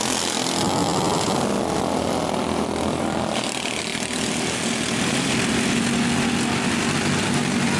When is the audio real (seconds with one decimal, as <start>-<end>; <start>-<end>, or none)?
0.0-7.8